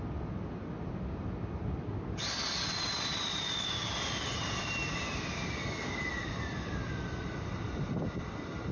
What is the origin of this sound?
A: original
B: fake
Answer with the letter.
A